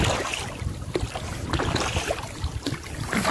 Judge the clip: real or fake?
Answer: real